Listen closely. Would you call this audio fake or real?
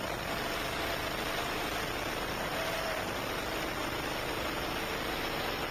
real